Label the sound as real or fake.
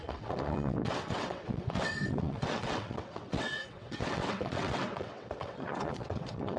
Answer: fake